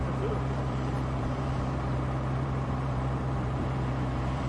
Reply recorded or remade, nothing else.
remade